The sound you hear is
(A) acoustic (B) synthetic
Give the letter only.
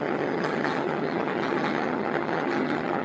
B